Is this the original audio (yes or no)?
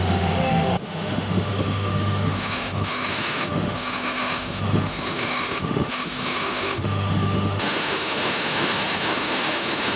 no